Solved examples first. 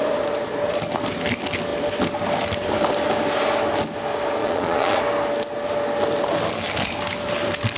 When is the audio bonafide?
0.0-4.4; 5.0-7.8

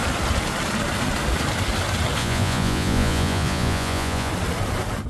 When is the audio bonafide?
0.0-2.2; 4.3-5.1

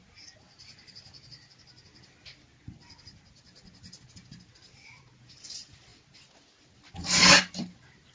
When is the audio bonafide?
0.0-8.1

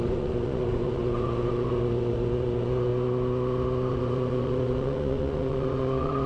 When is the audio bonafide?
2.9-3.9